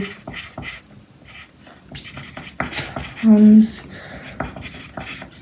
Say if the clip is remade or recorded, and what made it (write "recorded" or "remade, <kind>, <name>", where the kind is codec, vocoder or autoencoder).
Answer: recorded